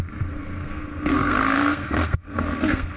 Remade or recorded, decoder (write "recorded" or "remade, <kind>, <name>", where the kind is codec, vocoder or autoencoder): remade, codec, SNAC